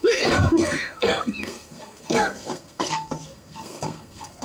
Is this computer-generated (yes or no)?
yes